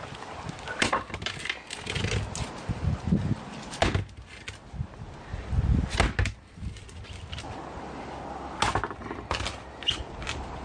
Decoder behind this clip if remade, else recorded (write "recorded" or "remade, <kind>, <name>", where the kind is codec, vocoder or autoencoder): recorded